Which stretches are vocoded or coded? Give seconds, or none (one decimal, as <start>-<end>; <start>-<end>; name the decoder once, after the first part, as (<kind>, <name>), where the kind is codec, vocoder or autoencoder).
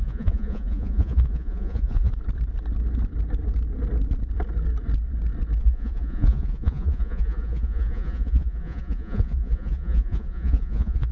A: 0.0-2.1 (vocoder, Vocos); 5.6-11.1